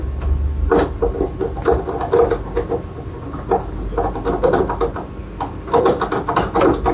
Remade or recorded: recorded